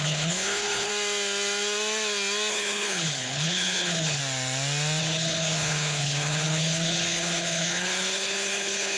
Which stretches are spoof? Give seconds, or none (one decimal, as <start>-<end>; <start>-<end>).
0.0-0.9; 2.5-4.2; 5.0-9.0